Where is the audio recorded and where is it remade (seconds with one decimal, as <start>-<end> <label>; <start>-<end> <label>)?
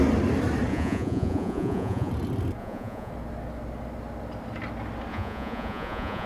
0.0-0.7 recorded; 0.7-2.1 remade; 2.1-2.6 recorded; 2.6-3.1 remade; 3.1-5.1 recorded; 5.1-6.3 remade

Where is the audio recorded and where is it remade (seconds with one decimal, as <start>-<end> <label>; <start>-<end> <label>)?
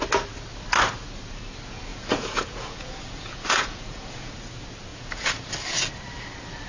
0.0-1.9 recorded; 1.9-4.3 remade; 4.3-4.9 recorded; 4.9-5.5 remade; 5.5-6.7 recorded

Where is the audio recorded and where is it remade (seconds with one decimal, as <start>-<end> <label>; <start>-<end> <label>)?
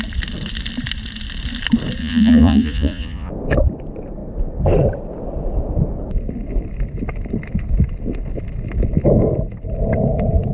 0.0-2.0 recorded; 2.0-3.3 remade; 3.3-10.5 recorded